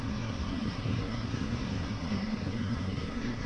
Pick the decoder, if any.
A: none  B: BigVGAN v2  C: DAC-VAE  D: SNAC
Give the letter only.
D